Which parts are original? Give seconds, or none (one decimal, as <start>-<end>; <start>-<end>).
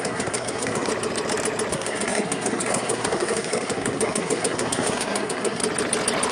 0.9-1.7; 5.6-6.3